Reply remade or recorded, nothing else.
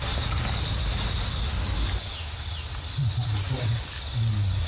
recorded